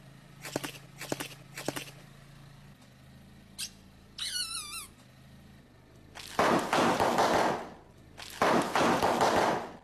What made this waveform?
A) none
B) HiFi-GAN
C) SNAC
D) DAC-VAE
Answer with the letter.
A